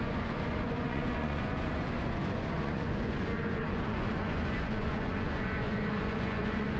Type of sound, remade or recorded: remade